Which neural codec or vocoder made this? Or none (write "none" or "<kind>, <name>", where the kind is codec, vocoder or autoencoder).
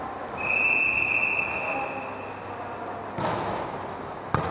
none